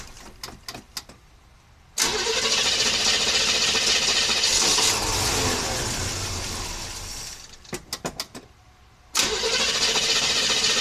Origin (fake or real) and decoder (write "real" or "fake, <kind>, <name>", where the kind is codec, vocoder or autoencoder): real